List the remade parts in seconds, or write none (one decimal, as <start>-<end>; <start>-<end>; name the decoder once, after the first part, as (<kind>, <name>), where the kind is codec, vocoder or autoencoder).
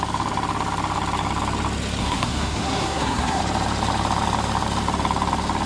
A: 2.0-3.4 (codec, SNAC)